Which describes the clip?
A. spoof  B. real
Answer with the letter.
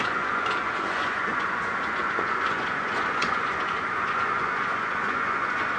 A